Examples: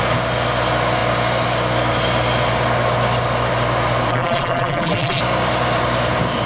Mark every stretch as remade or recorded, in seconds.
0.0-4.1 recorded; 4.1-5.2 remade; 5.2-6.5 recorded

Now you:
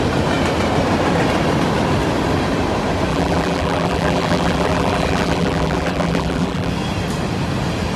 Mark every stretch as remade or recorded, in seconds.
0.0-3.1 recorded; 3.1-6.7 remade; 6.7-8.0 recorded

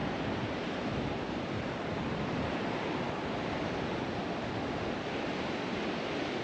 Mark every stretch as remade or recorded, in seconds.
0.0-3.1 remade; 3.1-6.4 recorded

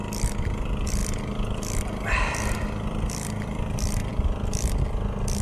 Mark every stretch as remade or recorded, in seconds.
0.0-5.4 recorded